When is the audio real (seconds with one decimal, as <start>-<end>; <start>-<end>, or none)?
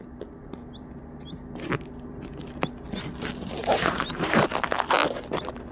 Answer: 0.0-0.4; 1.8-3.6; 4.5-5.7